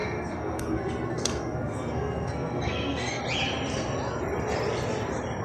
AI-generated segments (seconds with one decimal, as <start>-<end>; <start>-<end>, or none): 0.0-3.2